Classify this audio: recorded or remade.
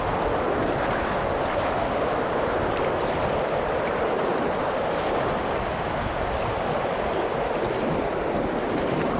recorded